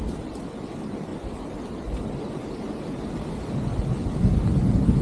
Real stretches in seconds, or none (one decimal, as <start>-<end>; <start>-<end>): 0.0-5.0